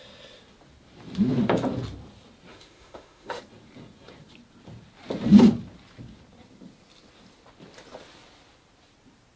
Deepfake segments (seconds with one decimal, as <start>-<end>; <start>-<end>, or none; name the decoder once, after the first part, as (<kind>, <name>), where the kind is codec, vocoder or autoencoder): 2.5-3.4 (autoencoder, DAC-VAE)